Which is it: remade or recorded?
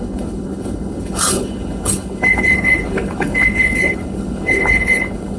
remade